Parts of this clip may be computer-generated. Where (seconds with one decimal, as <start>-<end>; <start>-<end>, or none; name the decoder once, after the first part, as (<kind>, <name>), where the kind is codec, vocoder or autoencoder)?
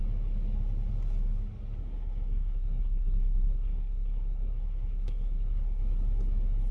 1.8-5.8 (codec, SNAC)